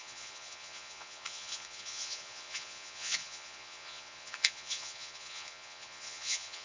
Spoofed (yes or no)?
yes